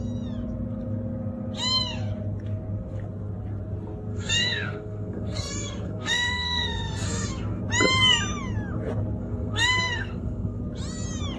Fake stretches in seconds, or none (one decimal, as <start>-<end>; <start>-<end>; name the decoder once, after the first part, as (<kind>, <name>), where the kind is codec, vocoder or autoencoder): 4.1-7.6 (codec, SNAC); 9.2-10.6